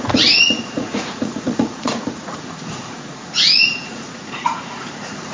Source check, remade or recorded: remade